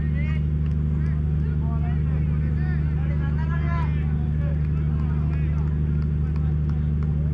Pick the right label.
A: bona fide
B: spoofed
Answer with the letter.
A